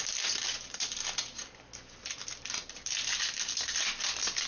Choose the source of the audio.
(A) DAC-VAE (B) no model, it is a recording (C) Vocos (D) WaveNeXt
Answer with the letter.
B